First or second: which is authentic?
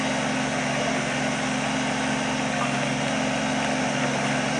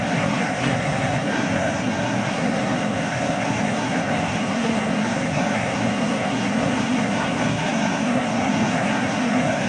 first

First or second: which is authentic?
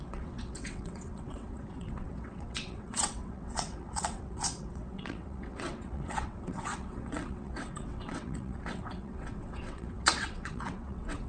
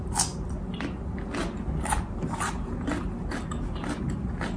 second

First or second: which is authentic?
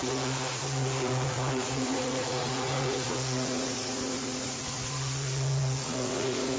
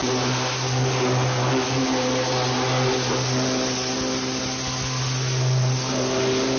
second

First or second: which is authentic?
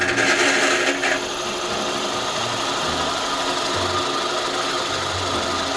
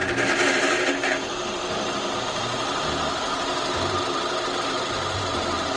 first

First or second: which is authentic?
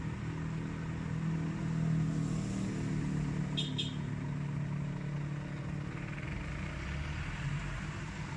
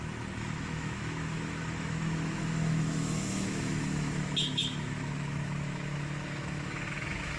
first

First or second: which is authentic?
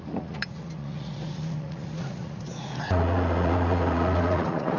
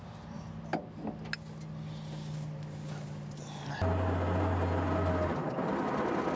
second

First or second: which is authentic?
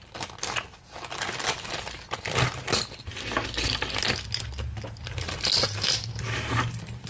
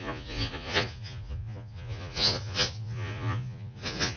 first